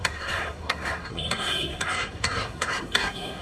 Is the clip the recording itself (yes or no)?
no